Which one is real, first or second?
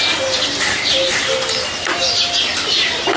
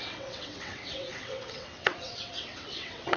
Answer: first